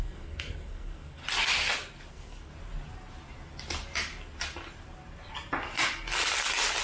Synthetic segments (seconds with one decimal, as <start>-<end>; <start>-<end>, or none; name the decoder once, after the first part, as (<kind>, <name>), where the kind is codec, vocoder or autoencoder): 0.0-1.2 (codec, SNAC); 2.1-2.5